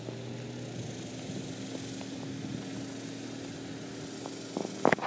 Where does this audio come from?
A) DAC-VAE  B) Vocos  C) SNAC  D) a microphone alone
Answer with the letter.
D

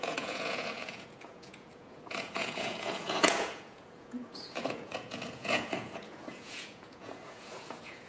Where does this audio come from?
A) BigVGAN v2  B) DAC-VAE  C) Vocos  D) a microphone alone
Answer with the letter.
C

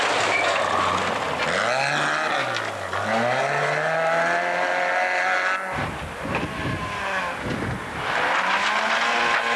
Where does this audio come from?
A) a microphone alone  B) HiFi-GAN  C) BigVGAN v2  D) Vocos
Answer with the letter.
A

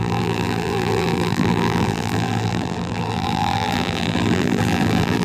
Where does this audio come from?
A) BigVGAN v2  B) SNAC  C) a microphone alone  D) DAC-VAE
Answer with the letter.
A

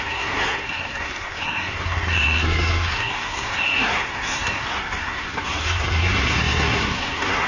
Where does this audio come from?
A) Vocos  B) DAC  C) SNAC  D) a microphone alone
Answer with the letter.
C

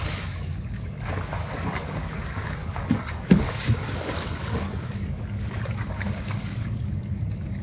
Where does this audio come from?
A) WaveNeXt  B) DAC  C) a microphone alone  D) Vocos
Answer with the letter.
B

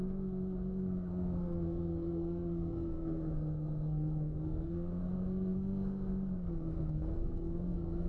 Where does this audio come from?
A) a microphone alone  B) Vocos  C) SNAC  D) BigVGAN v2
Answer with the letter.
C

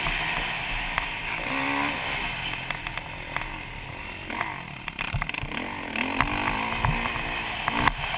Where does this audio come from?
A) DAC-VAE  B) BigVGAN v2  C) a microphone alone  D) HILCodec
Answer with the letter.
C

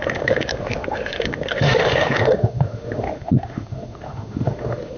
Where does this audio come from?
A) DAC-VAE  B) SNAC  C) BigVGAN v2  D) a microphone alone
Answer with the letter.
A